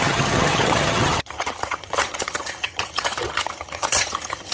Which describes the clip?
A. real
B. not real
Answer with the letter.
B